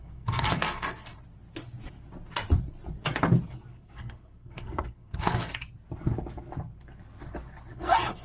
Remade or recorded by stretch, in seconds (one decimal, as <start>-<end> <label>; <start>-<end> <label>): 0.0-1.1 remade; 1.1-3.7 recorded; 3.7-5.5 remade; 5.5-7.7 recorded; 7.7-8.2 remade